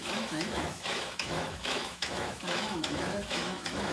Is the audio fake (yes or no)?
yes